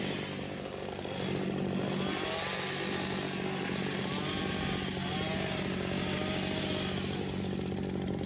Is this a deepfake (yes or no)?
no